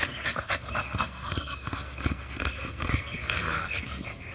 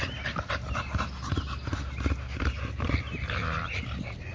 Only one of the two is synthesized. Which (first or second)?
first